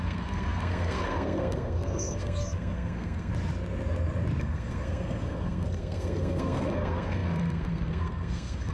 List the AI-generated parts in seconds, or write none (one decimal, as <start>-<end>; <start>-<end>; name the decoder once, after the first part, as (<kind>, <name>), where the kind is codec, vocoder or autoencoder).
0.0-3.3 (codec, SNAC); 4.4-8.7